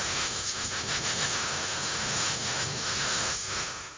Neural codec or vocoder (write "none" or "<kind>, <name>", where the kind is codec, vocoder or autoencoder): autoencoder, DAC-VAE